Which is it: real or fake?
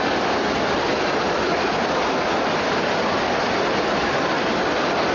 real